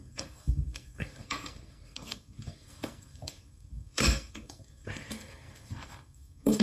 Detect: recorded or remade remade